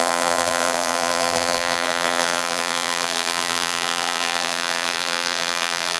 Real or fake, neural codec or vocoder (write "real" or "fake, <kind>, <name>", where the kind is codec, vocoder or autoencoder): fake, vocoder, BigVGAN v2